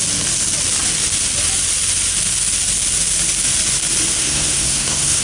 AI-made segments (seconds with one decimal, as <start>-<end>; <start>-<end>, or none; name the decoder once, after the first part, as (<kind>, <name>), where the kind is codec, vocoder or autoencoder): 4.2-5.2 (codec, SNAC)